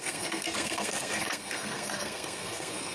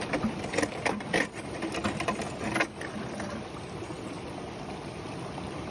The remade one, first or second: first